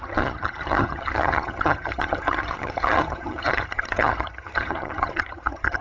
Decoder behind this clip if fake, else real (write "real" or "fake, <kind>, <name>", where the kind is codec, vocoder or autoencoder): fake, vocoder, HiFi-GAN